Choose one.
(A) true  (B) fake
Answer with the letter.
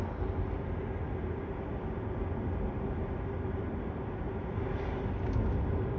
A